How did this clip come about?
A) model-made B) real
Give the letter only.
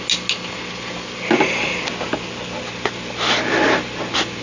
B